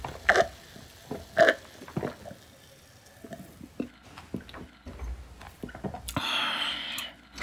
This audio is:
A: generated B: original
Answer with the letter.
B